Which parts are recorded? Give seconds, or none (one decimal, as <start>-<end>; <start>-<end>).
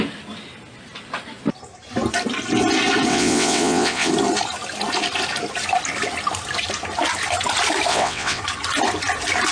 0.0-3.1; 4.1-7.9; 8.4-9.5